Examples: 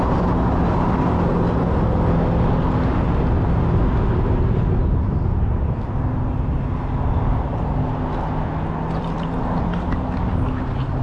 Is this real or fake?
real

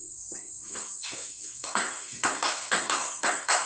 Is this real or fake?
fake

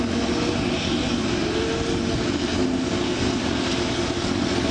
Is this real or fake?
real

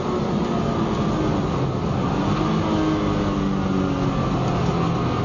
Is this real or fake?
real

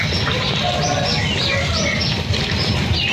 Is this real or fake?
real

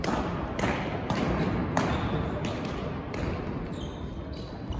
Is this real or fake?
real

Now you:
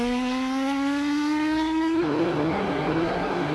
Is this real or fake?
fake